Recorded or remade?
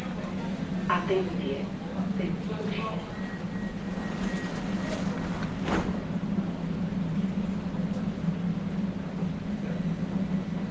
recorded